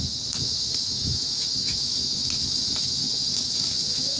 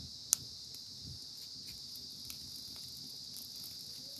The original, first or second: second